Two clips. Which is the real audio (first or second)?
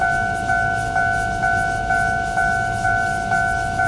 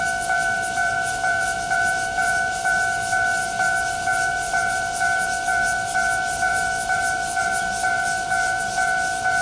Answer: first